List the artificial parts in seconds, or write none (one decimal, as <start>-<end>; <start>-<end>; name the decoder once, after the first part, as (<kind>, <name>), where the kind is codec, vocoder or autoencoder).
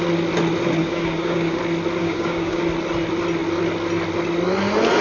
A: 0.8-1.6 (codec, DAC); 2.0-2.6